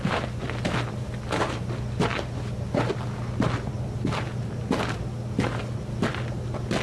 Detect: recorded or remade recorded